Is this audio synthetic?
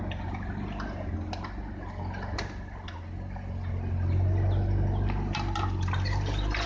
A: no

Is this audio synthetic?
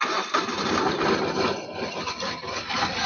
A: no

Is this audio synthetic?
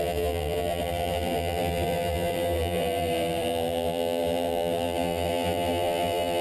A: yes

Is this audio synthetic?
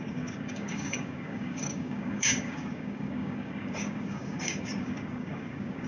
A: yes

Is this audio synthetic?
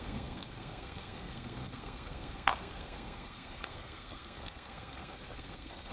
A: yes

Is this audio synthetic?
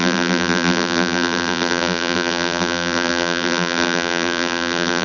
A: yes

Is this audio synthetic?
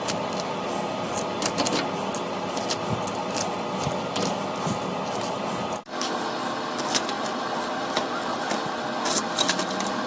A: no